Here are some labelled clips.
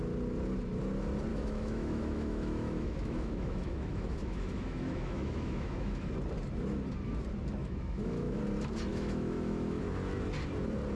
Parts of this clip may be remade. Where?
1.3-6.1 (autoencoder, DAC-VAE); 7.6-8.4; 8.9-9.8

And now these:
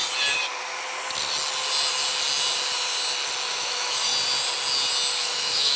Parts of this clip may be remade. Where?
3.5-4.1 (autoencoder, DAC-VAE); 5.2-5.8